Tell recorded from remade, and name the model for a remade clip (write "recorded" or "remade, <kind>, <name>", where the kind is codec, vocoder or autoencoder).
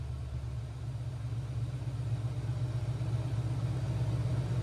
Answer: recorded